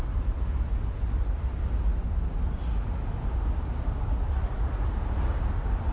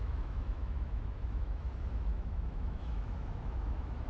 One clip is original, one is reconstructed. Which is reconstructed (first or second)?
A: second